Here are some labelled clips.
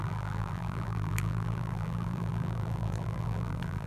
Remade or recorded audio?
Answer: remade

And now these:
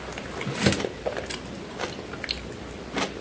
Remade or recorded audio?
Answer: recorded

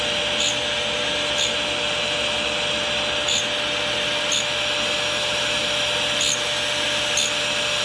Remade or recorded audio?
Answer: recorded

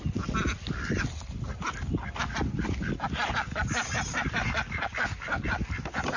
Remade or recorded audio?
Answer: recorded